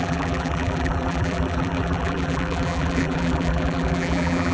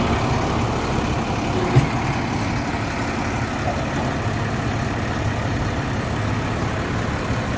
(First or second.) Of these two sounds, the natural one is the second